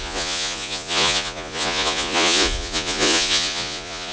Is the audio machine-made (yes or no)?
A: yes